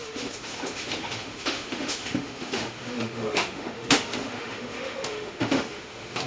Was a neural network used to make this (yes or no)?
yes